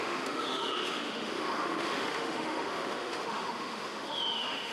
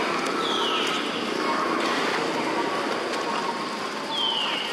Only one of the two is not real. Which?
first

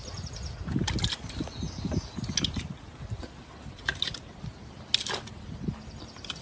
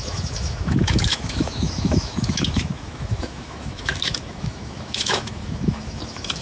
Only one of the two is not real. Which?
second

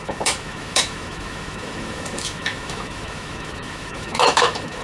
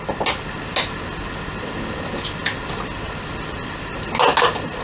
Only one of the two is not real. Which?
first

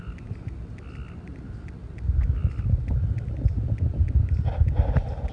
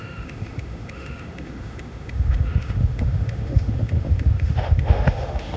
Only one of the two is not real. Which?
second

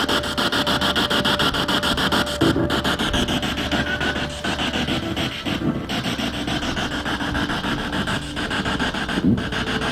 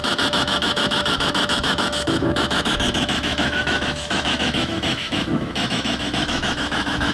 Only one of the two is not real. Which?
second